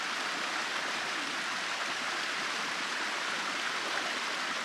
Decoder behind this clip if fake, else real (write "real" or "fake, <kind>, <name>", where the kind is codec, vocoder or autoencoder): real